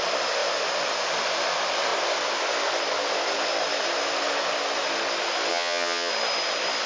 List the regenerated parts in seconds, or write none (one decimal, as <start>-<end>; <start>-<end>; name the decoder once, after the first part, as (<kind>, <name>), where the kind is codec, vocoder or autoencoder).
5.5-6.1 (vocoder, HiFi-GAN)